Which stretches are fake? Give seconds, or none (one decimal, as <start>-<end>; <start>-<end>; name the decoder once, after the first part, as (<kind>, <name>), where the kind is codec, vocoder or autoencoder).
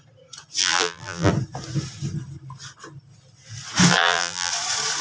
0.6-1.3 (vocoder, BigVGAN v2); 3.9-4.5